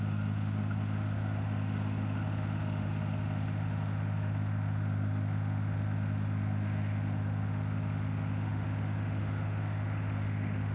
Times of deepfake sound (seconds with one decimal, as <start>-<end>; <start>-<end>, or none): 0.0-10.7